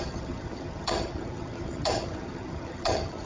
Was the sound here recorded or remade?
remade